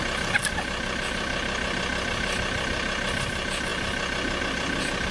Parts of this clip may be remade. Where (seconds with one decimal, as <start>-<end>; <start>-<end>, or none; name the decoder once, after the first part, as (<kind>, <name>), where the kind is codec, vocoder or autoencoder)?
none